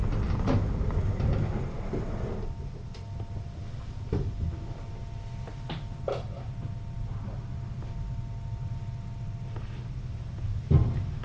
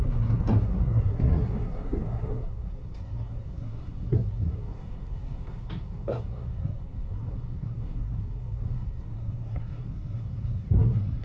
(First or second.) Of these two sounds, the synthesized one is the second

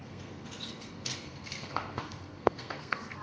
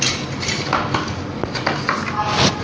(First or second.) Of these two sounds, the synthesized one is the first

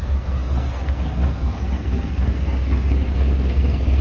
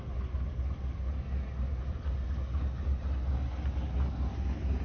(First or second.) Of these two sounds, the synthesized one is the first